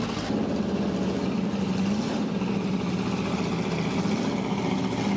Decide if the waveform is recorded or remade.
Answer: recorded